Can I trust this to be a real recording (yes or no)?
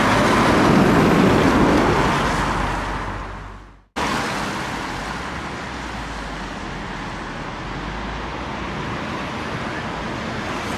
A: yes